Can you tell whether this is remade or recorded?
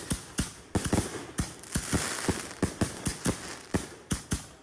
recorded